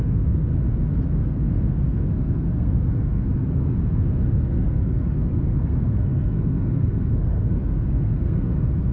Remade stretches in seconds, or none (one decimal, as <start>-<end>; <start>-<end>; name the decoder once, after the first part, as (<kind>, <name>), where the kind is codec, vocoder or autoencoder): 0.0-0.5 (codec, SNAC); 1.2-8.9